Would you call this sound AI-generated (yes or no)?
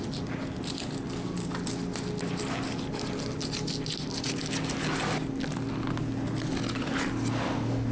no